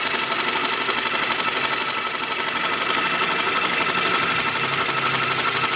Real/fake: real